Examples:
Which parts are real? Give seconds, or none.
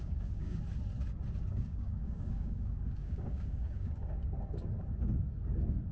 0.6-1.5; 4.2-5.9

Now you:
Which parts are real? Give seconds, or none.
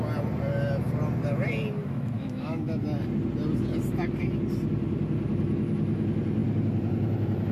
0.0-1.8; 2.8-7.5